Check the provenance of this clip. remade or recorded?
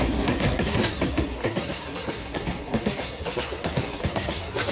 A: remade